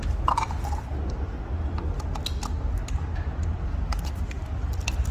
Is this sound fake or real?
real